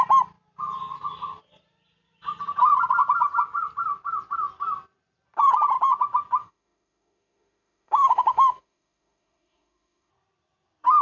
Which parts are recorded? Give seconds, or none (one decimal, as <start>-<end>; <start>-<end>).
0.0-6.4; 10.1-11.0